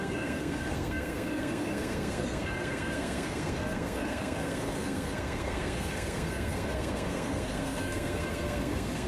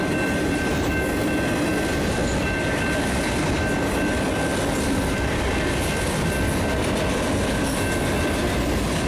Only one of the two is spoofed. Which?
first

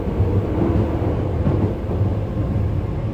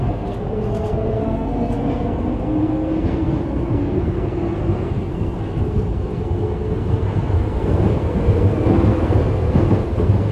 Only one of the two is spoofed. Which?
second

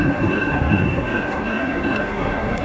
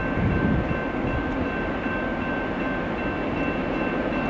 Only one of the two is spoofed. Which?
first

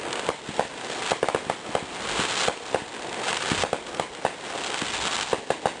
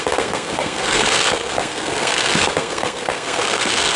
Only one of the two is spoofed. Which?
second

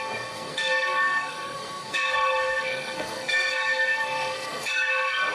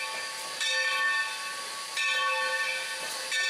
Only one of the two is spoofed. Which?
first